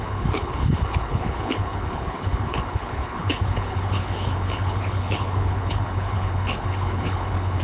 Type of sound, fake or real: fake